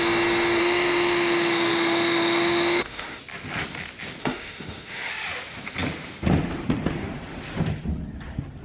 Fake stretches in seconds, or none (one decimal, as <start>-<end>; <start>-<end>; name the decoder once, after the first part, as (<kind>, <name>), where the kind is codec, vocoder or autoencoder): 0.6-3.2 (autoencoder, DAC-VAE); 4.2-5.1